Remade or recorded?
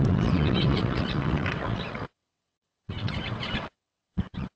remade